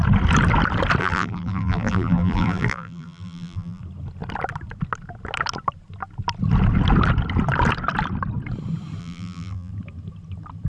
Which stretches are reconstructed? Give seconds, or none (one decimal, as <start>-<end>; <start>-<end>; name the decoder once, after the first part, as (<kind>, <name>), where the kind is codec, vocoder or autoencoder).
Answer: 1.0-3.8 (vocoder, BigVGAN v2); 9.0-9.7